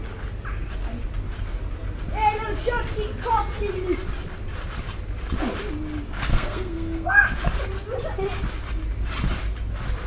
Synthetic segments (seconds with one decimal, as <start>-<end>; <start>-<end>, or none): 6.3-7.1